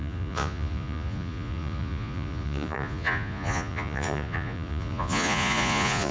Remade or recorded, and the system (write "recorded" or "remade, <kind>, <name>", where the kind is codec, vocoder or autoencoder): remade, vocoder, Vocos